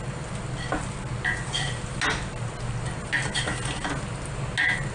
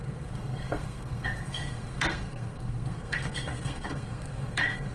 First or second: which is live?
first